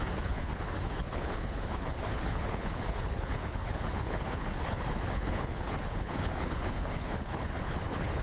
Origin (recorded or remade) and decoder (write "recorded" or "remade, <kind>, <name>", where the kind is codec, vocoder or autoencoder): remade, codec, HILCodec